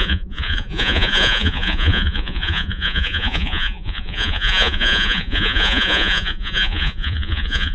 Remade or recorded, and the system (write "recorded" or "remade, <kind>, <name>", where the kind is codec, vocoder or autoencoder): remade, vocoder, Vocos